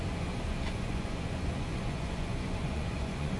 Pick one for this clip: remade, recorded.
remade